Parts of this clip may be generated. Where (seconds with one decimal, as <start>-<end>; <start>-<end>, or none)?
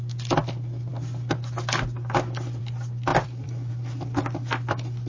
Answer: 3.1-3.7